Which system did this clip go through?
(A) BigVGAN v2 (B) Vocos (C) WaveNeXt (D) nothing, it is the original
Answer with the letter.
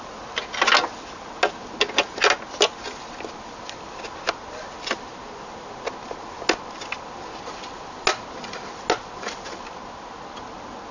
D